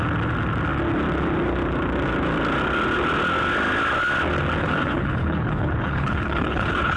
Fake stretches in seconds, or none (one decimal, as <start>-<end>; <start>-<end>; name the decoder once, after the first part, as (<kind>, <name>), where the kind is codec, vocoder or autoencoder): 4.6-7.0 (codec, HILCodec)